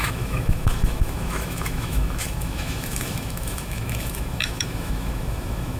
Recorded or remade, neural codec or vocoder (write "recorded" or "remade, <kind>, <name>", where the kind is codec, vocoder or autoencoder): remade, autoencoder, DAC-VAE